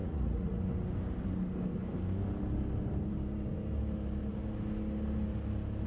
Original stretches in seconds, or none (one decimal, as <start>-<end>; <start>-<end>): 0.6-5.9